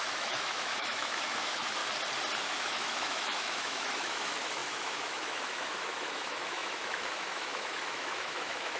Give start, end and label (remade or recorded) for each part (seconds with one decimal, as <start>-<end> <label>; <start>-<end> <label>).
0.0-1.8 remade; 1.8-2.4 recorded; 2.4-8.8 remade